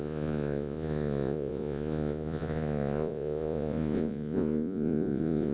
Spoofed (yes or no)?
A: yes